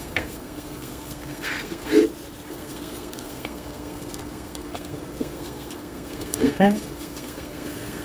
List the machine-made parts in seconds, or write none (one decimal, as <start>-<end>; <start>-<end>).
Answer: 0.0-2.0; 2.5-8.0